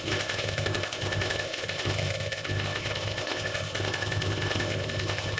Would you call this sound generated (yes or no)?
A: yes